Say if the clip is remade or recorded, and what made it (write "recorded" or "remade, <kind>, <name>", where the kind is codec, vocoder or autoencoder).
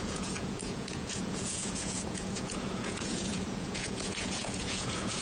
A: remade, vocoder, Vocos